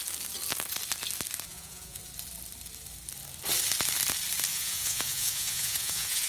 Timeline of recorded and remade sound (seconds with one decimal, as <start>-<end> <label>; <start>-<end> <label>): 0.0-1.5 recorded; 1.5-2.0 remade; 2.0-4.5 recorded; 4.5-6.3 remade